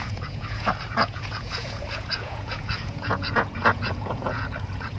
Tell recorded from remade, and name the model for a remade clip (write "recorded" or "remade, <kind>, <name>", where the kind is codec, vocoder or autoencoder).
remade, vocoder, Vocos